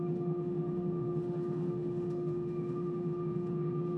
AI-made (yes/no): yes